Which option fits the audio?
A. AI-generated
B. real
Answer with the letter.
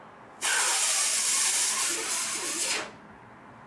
B